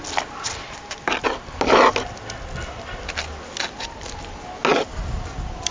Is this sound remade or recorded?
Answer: recorded